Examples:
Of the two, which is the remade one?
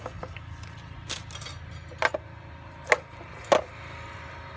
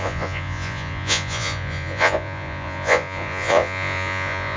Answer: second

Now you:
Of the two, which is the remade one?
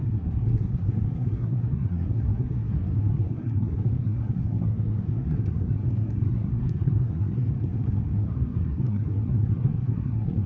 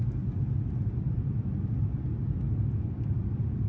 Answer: first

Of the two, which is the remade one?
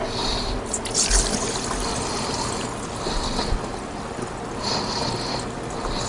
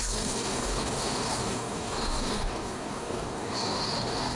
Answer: second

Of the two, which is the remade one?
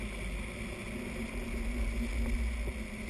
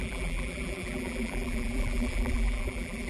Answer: second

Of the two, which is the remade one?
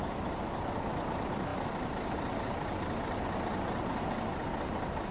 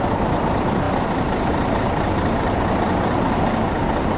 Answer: second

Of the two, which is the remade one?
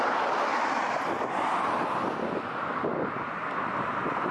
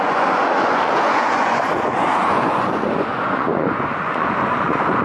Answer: second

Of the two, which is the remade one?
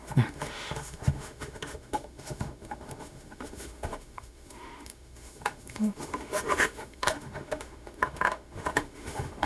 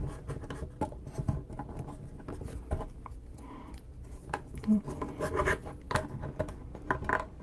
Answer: first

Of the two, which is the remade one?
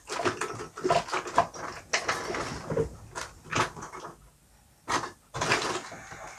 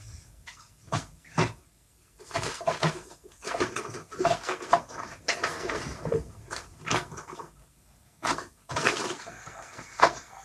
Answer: second